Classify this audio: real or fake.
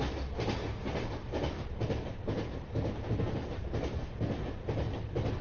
real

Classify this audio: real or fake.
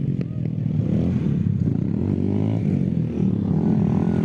real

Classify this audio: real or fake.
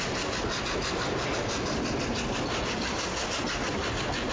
real